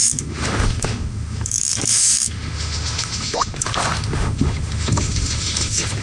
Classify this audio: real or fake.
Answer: fake